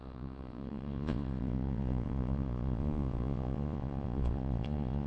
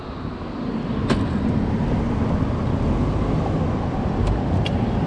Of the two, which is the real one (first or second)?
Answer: second